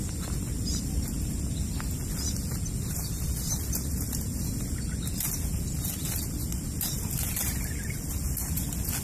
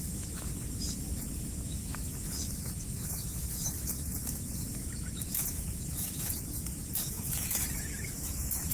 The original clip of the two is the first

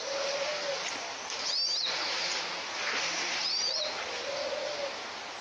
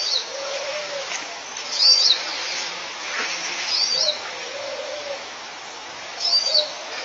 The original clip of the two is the first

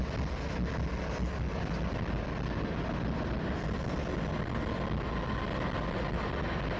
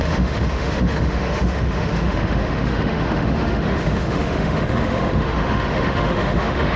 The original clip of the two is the first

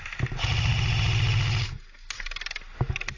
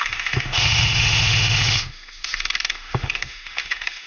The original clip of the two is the first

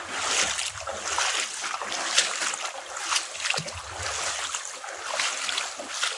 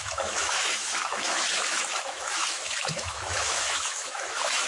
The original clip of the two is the first